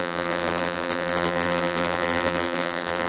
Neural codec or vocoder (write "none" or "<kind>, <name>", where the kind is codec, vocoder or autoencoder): vocoder, BigVGAN v2